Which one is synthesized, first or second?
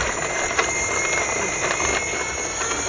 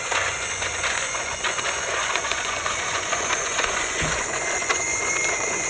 second